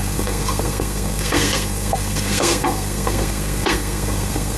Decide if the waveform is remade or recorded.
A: remade